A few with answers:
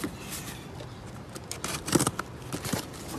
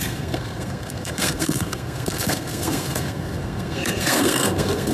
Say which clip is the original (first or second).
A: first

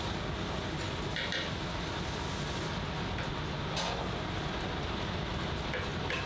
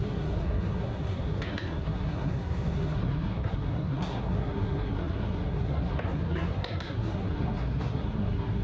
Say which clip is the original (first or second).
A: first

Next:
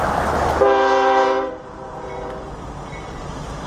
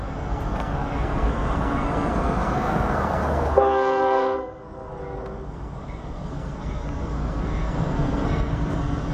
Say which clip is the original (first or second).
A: first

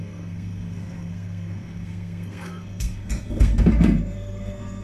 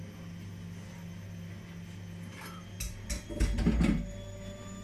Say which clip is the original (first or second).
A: second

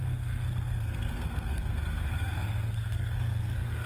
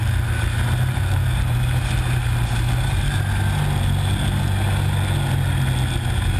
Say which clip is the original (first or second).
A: second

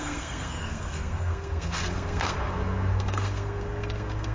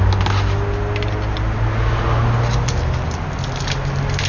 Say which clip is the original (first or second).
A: second